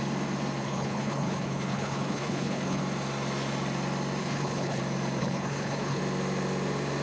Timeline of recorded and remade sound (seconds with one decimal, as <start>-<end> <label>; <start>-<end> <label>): 0.0-0.6 recorded; 0.6-2.8 remade; 2.8-4.2 recorded; 4.2-4.8 remade; 4.8-5.2 recorded; 5.2-6.0 remade; 6.0-7.0 recorded